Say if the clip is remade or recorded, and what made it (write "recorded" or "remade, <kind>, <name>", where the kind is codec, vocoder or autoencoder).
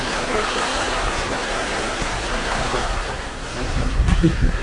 remade, codec, SNAC